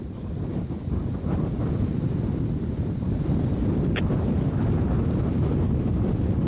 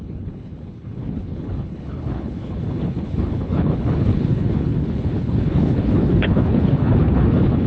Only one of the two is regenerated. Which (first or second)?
second